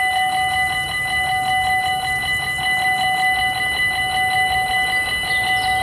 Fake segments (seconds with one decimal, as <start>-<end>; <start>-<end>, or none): none